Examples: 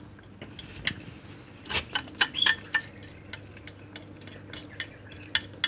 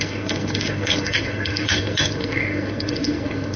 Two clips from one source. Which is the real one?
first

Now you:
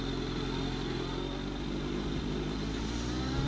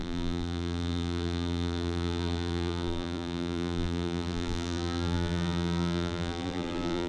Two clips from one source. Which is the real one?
first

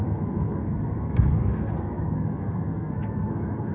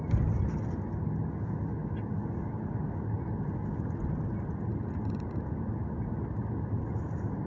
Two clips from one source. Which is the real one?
second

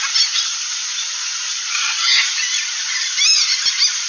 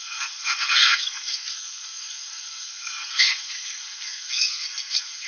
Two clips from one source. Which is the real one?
first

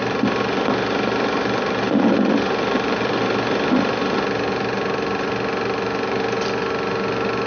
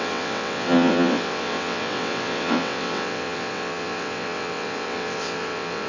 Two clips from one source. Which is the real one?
first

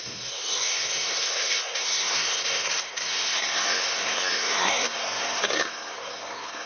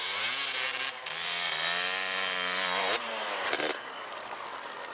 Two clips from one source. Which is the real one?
second